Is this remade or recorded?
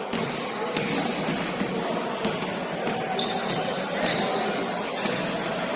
recorded